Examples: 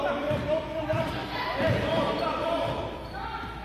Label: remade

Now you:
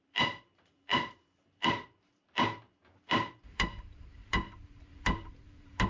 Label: remade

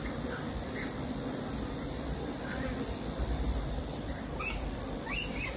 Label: remade